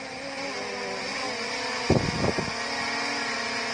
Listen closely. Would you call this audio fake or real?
real